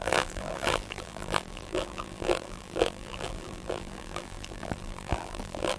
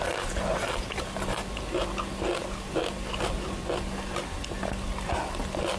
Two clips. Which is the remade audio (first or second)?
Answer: first